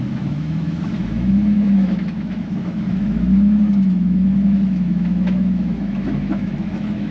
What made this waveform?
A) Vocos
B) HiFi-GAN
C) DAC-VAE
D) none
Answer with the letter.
C